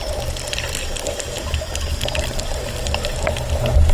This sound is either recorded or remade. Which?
recorded